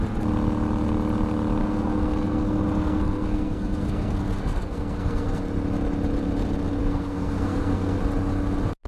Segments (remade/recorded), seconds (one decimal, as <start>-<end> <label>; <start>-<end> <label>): 0.0-1.6 recorded; 1.6-5.4 remade; 5.4-6.8 recorded; 6.8-8.0 remade; 8.0-8.9 recorded